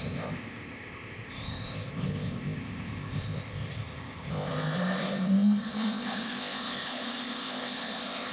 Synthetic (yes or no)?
yes